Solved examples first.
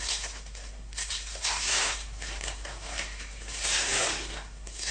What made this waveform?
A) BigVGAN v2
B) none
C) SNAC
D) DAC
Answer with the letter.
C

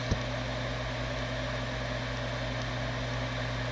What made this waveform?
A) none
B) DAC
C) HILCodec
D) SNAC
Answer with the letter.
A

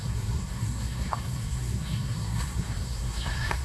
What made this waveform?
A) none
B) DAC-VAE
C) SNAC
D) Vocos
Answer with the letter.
C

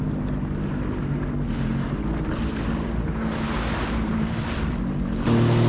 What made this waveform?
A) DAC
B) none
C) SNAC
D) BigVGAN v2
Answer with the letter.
B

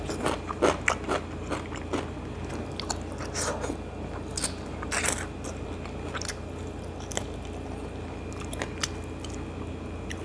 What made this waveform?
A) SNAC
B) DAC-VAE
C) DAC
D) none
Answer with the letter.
D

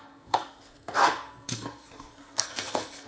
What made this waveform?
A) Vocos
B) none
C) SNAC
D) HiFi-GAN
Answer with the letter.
C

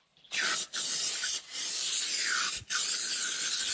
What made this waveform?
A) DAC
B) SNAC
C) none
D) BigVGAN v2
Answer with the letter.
C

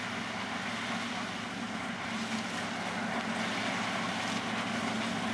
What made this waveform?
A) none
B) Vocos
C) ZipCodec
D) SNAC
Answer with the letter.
A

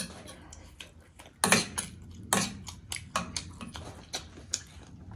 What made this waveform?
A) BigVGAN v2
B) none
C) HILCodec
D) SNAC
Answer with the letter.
B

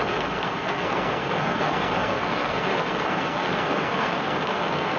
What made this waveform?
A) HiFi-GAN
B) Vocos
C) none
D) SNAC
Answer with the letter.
D